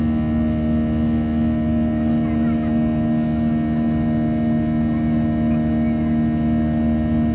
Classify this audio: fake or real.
real